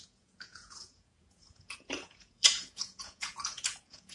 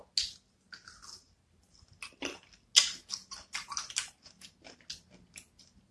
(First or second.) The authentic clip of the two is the second